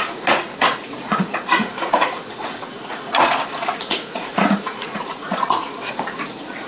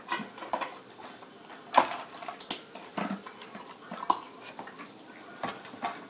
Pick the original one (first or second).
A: second